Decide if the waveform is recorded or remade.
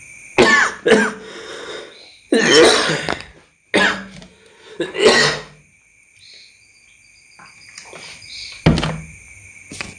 recorded